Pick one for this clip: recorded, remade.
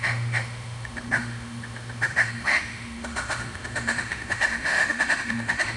remade